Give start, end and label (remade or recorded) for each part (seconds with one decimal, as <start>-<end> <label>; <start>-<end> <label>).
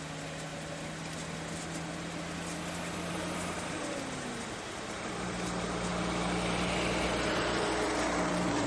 0.0-5.9 recorded; 5.9-8.7 remade